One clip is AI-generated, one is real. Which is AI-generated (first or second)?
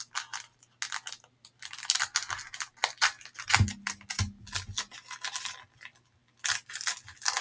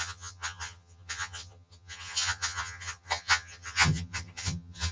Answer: second